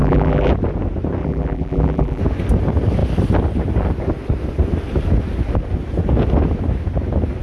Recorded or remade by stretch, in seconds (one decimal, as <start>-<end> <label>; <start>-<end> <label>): 0.0-0.5 remade; 0.5-1.2 recorded; 1.2-2.2 remade; 2.2-7.4 recorded